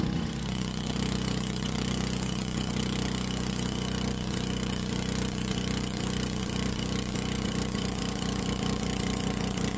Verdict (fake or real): fake